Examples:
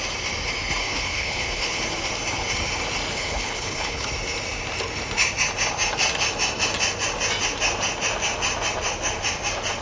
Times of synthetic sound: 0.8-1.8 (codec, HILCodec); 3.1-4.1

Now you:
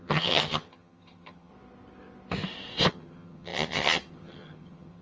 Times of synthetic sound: 0.0-1.5 (vocoder, HiFi-GAN); 2.9-5.0

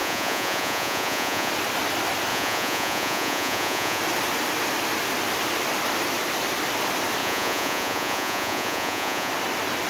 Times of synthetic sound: 0.0-1.5 (vocoder, Vocos); 2.3-4.0; 7.2-9.3

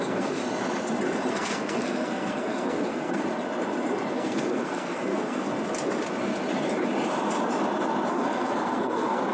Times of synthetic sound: 0.0-0.4 (codec, SNAC); 1.3-3.2; 4.1-5.5; 8.1-9.3

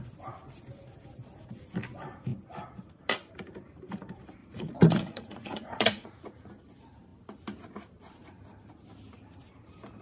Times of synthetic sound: 4.4-6.5 (vocoder, Vocos)

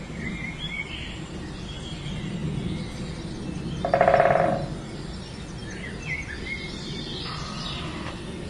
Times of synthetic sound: none

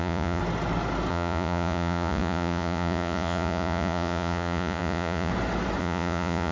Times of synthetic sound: 0.0-0.4 (vocoder, Vocos); 1.1-5.3; 5.8-6.5

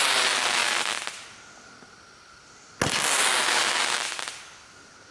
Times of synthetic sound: none